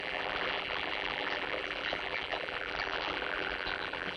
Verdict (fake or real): fake